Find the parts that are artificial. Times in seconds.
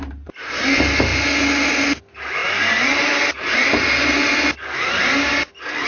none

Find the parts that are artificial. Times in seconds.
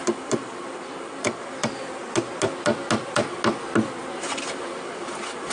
0.0-1.6 (vocoder, BigVGAN v2); 4.2-5.5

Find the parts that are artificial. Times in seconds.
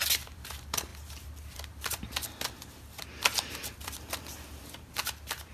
0.0-5.5 (vocoder, BigVGAN v2)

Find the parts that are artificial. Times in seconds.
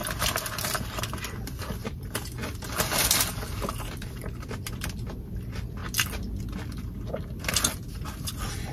1.8-4.7 (vocoder, BigVGAN v2)